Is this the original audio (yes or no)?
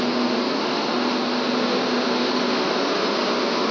yes